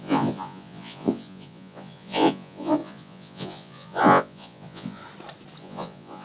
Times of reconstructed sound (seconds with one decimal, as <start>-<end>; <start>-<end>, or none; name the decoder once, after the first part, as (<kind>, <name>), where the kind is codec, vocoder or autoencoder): 0.0-5.0 (vocoder, Vocos); 5.6-6.2